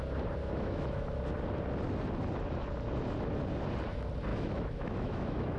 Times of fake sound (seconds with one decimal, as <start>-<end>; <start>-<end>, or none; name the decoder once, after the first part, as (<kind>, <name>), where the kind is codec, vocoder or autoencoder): 0.4-1.2 (autoencoder, DAC-VAE); 4.3-5.6